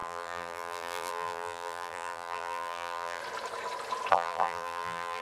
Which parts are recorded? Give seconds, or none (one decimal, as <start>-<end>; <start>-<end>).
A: 3.2-4.1